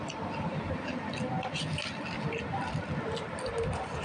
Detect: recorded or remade recorded